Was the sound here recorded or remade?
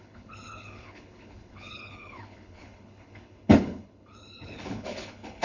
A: remade